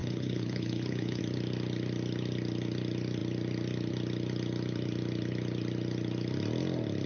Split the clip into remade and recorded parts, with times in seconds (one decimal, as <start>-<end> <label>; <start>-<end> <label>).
0.0-1.2 remade; 1.2-7.1 recorded